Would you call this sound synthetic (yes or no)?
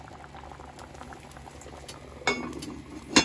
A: no